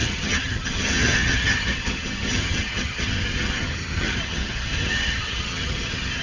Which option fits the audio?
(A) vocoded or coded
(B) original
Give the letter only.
A